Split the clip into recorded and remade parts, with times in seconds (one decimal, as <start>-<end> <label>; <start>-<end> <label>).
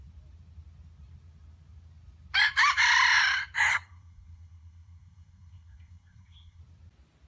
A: 0.0-3.7 recorded; 3.7-6.6 remade; 6.6-7.3 recorded